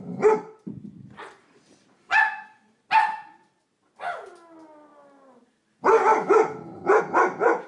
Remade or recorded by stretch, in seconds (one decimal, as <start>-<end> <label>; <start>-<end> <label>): 0.0-2.1 recorded; 2.1-2.7 remade; 2.7-7.7 recorded